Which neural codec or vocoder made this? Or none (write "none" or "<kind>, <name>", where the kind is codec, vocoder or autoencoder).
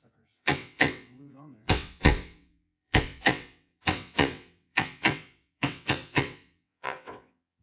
vocoder, WaveNeXt